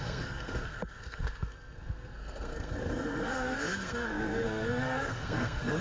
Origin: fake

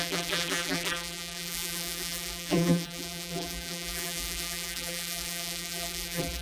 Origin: fake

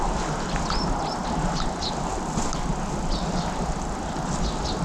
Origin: real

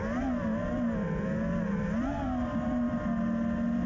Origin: real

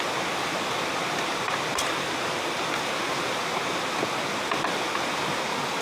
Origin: real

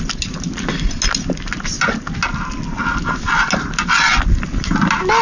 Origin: real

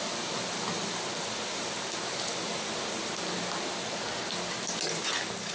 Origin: real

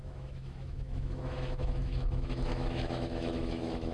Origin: fake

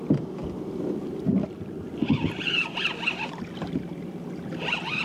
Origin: fake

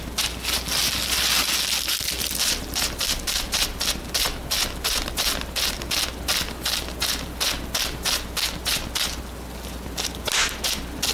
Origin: real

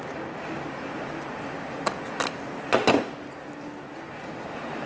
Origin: real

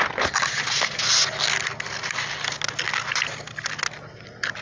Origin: real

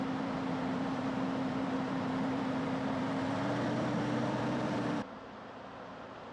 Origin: fake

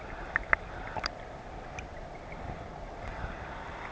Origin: real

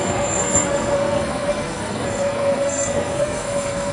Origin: fake